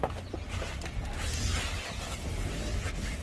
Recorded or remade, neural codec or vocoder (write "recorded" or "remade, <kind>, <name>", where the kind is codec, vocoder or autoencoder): recorded